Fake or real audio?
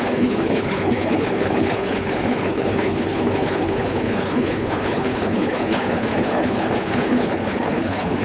fake